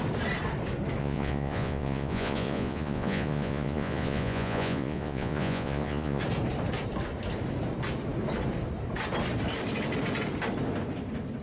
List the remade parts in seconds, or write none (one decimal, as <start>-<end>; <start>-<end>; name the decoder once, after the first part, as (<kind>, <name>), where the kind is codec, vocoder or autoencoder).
1.0-6.2 (vocoder, Vocos)